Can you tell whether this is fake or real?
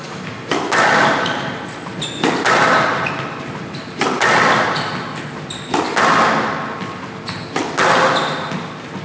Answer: real